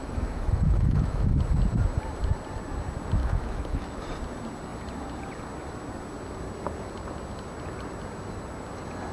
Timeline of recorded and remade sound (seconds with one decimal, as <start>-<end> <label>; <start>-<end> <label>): 0.0-1.4 remade; 1.4-3.2 recorded; 3.2-4.0 remade; 4.0-9.1 recorded